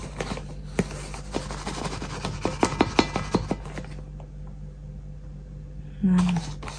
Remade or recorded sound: recorded